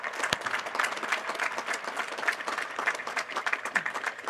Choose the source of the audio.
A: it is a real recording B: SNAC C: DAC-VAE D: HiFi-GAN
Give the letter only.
A